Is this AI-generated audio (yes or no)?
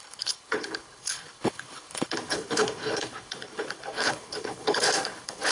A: yes